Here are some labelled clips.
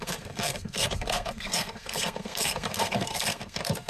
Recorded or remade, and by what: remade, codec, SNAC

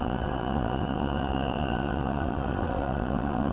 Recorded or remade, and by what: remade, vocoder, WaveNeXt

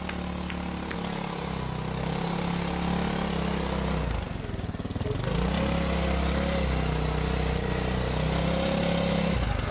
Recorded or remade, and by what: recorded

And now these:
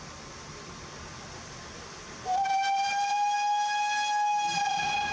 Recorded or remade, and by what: recorded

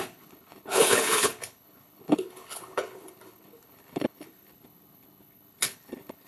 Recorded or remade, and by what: remade, codec, HILCodec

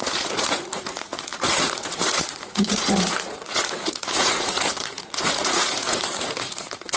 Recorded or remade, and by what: remade, vocoder, Vocos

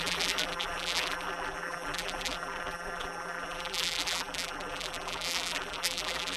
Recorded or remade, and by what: remade, vocoder, BigVGAN v2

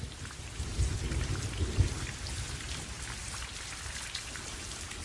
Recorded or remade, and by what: recorded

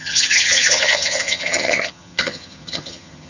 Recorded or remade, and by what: remade, vocoder, HiFi-GAN